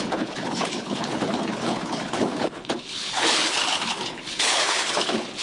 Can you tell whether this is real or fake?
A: fake